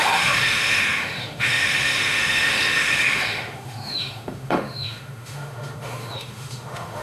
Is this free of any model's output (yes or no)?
no